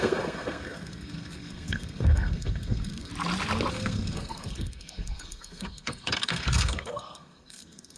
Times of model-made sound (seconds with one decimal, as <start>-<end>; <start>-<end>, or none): 0.0-3.1; 3.7-8.0